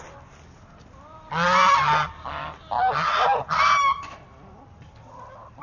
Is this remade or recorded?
recorded